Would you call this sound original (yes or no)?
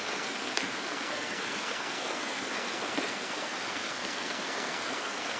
no